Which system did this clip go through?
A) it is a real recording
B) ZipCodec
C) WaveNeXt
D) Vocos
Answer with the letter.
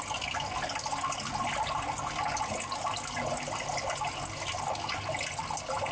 A